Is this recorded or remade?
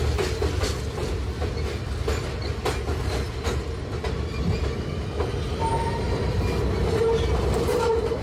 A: recorded